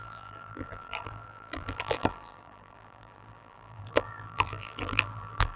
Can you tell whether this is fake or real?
fake